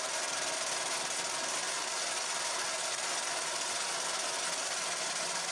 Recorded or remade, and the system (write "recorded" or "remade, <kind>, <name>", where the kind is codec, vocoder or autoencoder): recorded